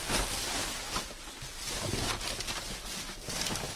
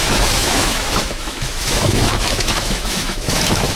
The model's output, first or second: second